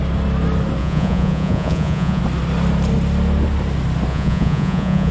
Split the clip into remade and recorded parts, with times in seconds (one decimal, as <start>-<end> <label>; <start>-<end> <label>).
0.0-0.8 recorded; 0.8-2.2 remade; 2.2-4.1 recorded; 4.1-5.1 remade